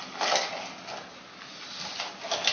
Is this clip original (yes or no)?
yes